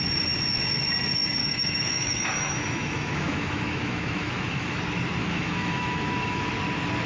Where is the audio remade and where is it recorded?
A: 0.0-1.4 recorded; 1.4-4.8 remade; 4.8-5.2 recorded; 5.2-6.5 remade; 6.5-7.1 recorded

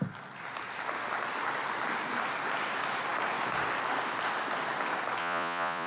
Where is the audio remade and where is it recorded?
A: 0.0-5.2 recorded; 5.2-5.9 remade

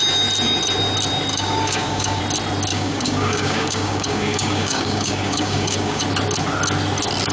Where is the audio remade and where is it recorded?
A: 0.0-1.3 recorded; 1.3-2.2 remade; 2.2-2.7 recorded; 2.7-6.0 remade; 6.0-7.3 recorded

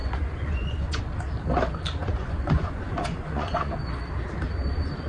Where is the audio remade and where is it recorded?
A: 0.0-1.0 remade; 1.0-2.0 recorded; 2.0-3.7 remade; 3.7-5.1 recorded

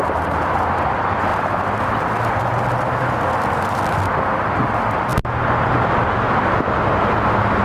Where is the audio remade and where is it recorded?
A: 0.0-7.6 recorded